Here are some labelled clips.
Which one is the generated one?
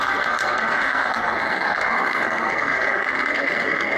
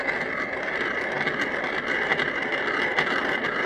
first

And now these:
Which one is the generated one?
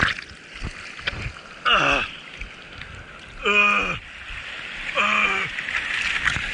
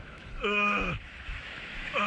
second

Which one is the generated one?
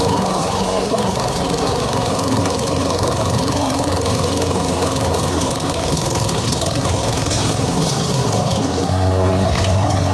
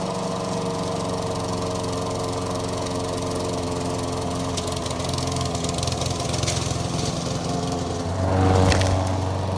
first